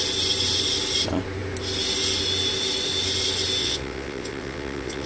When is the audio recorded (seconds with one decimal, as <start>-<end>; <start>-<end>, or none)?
0.0-3.6